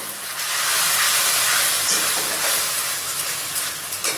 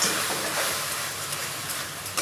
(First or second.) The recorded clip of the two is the first